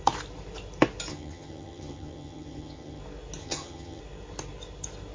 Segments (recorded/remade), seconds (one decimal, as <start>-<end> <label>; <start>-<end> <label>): 0.0-1.1 recorded; 1.1-3.0 remade; 3.0-3.4 recorded; 3.4-4.0 remade; 4.0-5.1 recorded